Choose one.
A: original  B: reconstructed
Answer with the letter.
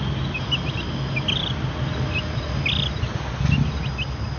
A